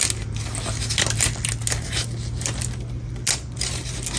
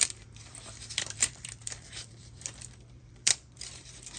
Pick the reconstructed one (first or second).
second